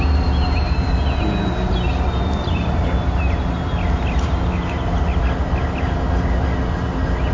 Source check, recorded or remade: recorded